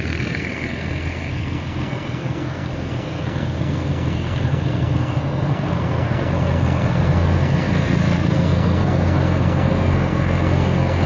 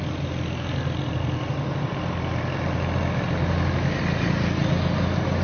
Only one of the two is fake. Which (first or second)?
first